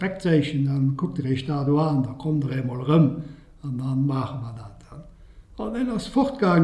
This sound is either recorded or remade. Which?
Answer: recorded